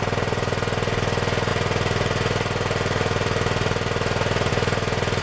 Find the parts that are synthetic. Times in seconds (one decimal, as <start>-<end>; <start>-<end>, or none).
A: none